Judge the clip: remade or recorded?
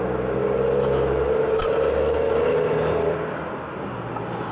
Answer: recorded